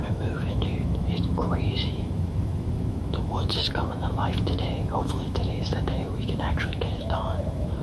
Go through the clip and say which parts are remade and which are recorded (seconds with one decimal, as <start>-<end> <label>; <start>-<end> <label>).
0.0-7.8 remade